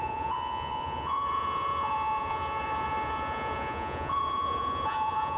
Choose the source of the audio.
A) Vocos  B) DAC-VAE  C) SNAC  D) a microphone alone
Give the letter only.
A